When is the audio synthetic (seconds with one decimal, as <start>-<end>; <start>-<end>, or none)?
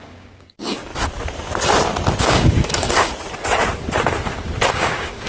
0.0-0.9; 2.2-3.1; 4.7-5.3